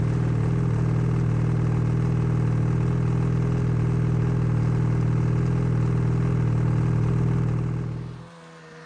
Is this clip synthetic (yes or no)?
no